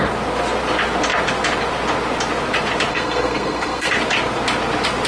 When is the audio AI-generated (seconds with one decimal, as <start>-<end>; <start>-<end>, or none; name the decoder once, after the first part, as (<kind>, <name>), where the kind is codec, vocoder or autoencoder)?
2.9-3.9 (codec, SNAC)